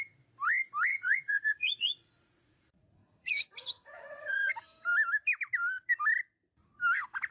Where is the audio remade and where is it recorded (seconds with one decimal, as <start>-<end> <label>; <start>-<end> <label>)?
0.0-0.9 recorded; 0.9-4.5 remade; 4.5-7.3 recorded